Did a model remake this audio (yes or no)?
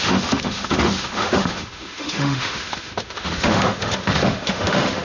yes